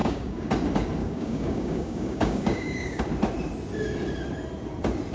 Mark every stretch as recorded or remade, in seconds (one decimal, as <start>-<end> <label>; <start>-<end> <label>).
0.0-0.5 remade; 0.5-1.0 recorded; 1.0-3.0 remade; 3.0-5.1 recorded